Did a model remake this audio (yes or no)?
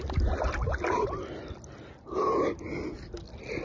no